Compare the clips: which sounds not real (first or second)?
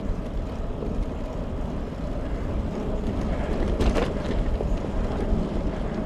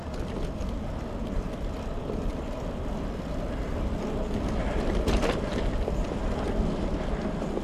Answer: first